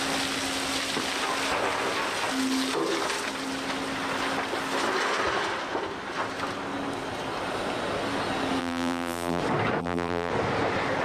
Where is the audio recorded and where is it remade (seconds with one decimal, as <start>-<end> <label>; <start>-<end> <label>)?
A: 0.0-8.6 recorded; 8.6-9.4 remade; 9.4-9.8 recorded; 9.8-10.3 remade; 10.3-11.0 recorded